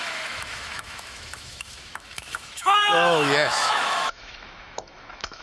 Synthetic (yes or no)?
yes